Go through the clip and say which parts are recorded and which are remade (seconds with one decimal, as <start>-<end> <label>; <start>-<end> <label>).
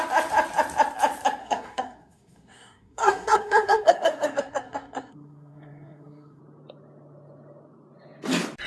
0.0-1.4 recorded; 1.4-6.4 remade; 6.4-8.7 recorded